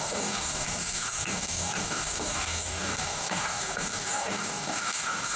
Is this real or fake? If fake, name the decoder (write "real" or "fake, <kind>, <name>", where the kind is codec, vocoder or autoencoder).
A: fake, codec, DAC